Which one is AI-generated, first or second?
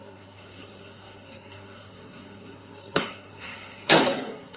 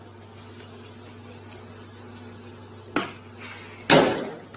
first